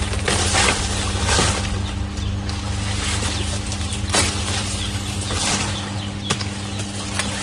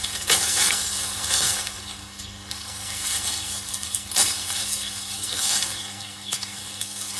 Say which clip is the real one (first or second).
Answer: first